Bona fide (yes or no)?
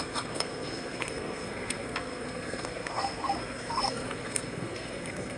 no